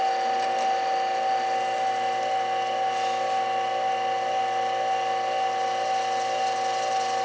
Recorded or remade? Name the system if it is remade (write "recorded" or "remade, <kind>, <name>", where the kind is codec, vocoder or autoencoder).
recorded